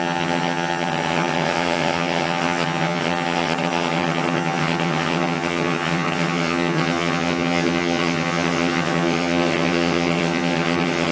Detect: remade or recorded remade